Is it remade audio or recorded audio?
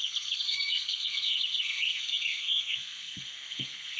remade